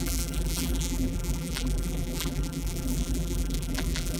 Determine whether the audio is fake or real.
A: fake